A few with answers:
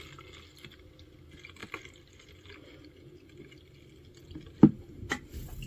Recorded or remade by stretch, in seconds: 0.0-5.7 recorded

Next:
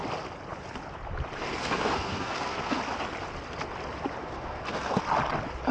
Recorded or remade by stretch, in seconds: 0.0-1.6 recorded; 1.6-2.8 remade; 2.8-4.2 recorded; 4.2-5.0 remade; 5.0-5.7 recorded

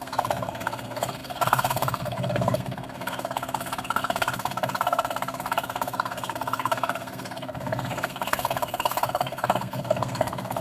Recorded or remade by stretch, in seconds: 0.0-10.6 remade

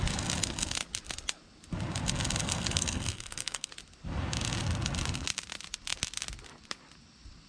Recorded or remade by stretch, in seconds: 0.0-2.4 recorded; 2.4-3.7 remade; 3.7-7.5 recorded

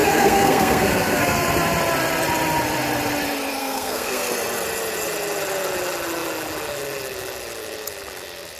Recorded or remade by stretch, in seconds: 0.0-1.5 remade; 1.5-3.6 recorded; 3.6-4.3 remade; 4.3-8.6 recorded

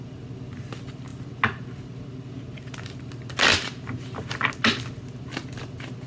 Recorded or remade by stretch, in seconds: 0.0-6.1 recorded

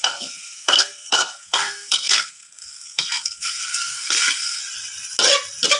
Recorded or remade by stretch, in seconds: 0.0-4.6 remade; 4.6-5.8 recorded